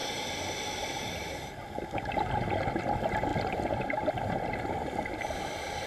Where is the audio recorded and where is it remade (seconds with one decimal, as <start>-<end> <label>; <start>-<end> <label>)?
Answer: 0.0-2.8 recorded; 2.8-5.9 remade